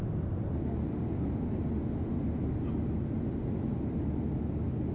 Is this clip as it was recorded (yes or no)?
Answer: yes